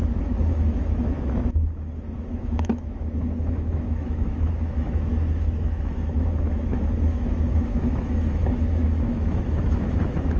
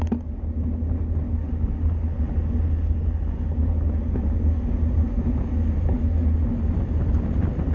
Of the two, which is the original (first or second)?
second